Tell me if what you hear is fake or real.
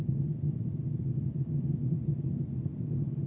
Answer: real